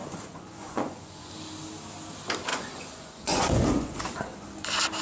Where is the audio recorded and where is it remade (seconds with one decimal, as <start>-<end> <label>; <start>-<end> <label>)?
0.0-1.3 remade; 1.3-2.5 recorded; 2.5-4.0 remade; 4.0-5.0 recorded

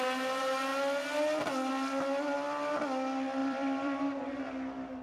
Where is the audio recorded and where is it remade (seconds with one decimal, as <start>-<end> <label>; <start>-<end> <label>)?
0.0-3.4 recorded; 3.4-4.0 remade; 4.0-5.0 recorded

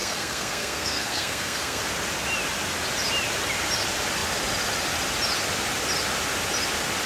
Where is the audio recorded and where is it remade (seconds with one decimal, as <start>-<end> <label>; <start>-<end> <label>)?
0.0-1.8 remade; 1.8-7.1 recorded